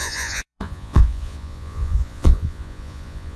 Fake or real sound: fake